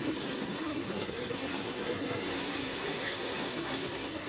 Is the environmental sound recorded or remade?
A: remade